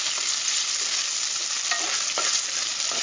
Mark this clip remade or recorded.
recorded